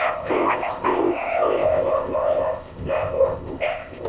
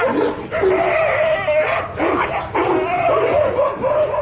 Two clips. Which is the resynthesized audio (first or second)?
first